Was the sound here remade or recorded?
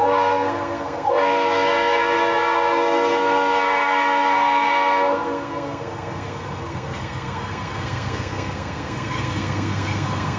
remade